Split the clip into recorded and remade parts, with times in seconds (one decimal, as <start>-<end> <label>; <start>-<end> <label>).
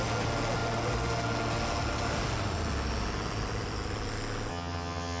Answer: 0.0-4.5 recorded; 4.5-5.2 remade